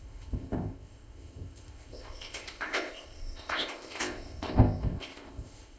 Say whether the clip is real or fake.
fake